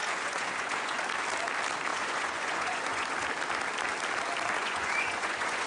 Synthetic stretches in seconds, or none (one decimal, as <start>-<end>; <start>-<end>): 0.0-1.0; 1.9-3.1; 4.6-5.7